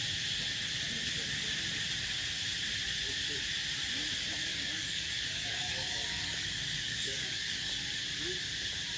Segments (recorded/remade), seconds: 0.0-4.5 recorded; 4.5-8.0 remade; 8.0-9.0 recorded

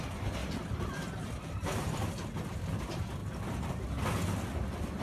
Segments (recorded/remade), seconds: 0.0-0.4 recorded; 0.4-2.7 remade; 2.7-5.0 recorded

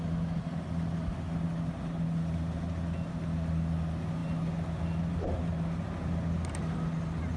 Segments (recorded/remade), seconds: 0.0-7.4 recorded

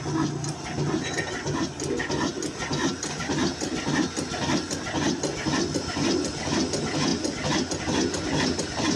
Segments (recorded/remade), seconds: 0.0-9.0 recorded

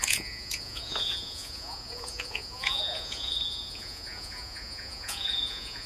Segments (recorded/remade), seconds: 0.0-5.9 remade

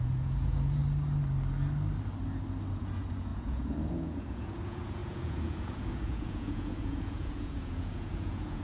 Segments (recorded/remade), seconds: 0.0-0.8 remade; 0.8-2.7 recorded; 2.7-8.6 remade

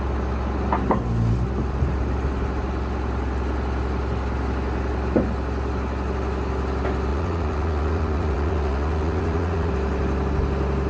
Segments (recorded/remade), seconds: 0.0-7.1 recorded; 7.1-9.7 remade; 9.7-10.9 recorded